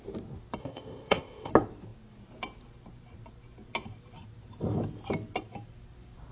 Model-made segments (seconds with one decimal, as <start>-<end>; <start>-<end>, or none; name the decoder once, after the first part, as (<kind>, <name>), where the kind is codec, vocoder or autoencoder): 0.6-1.5 (codec, ZipCodec)